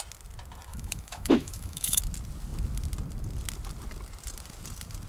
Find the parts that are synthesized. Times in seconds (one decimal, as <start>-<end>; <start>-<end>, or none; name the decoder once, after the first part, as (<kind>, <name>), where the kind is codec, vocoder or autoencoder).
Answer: 0.7-2.0 (autoencoder, DAC-VAE)